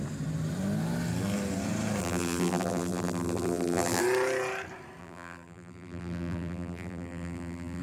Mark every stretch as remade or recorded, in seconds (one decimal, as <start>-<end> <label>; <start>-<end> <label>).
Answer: 0.0-2.0 recorded; 2.0-4.0 remade; 4.0-5.0 recorded; 5.0-7.8 remade